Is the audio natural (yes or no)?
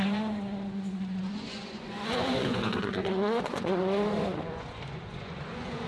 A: no